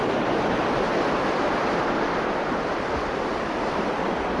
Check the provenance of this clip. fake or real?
fake